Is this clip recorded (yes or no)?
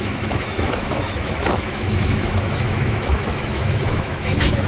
no